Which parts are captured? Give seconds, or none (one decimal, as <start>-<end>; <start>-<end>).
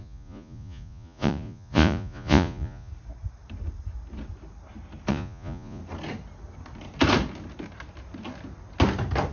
2.9-5.1; 5.8-9.3